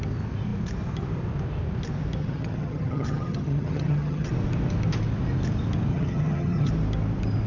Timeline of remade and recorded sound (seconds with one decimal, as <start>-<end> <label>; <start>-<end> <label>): 0.0-2.2 recorded; 2.2-4.3 remade; 4.3-5.9 recorded; 5.9-6.7 remade; 6.7-7.5 recorded

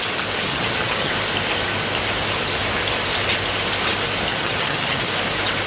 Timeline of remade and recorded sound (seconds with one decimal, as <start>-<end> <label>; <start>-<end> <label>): 0.0-0.5 recorded; 0.5-1.1 remade; 1.1-4.3 recorded; 4.3-5.1 remade; 5.1-5.7 recorded

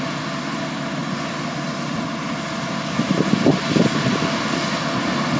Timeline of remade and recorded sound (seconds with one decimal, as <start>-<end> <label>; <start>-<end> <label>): 0.0-5.4 recorded

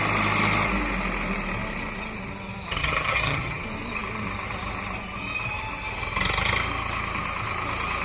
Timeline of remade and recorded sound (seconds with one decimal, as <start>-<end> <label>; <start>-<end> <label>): 0.0-2.8 recorded; 2.8-3.6 remade; 3.6-8.0 recorded

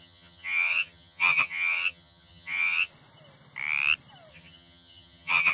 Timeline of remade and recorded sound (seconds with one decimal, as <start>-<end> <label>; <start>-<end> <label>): 0.0-2.9 remade; 2.9-4.3 recorded; 4.3-5.5 remade

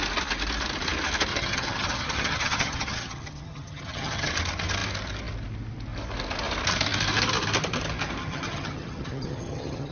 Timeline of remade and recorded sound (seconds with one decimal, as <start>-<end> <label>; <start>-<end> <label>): 0.0-1.3 recorded; 1.3-4.3 remade; 4.3-8.2 recorded; 8.2-9.9 remade